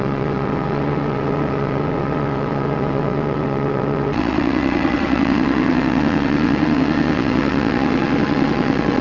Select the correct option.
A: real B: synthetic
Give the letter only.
B